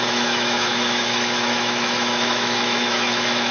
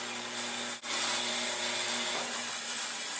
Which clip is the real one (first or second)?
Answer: second